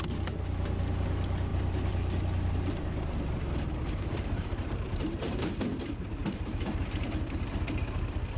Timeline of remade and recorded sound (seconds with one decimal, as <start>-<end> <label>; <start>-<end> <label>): 0.0-1.5 recorded; 1.5-5.5 remade; 5.5-6.2 recorded; 6.2-6.8 remade; 6.8-8.4 recorded